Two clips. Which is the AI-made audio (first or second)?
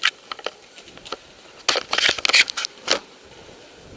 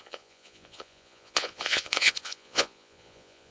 second